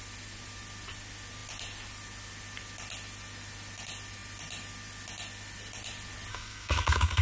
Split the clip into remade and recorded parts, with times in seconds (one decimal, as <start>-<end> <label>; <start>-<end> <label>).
0.0-6.3 recorded; 6.3-7.2 remade